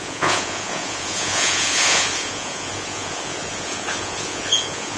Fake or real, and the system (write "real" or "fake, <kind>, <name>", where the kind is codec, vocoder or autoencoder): fake, vocoder, Vocos